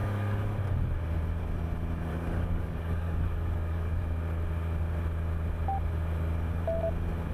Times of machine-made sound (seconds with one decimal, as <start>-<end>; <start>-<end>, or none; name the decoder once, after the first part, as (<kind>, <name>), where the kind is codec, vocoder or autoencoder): 0.0-0.6 (codec, DAC); 2.1-4.0